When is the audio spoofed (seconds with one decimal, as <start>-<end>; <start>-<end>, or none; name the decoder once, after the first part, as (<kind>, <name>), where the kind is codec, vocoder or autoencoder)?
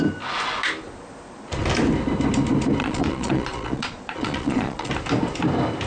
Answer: 2.8-4.9 (vocoder, Vocos)